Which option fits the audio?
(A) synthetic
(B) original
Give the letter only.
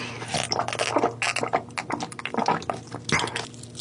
B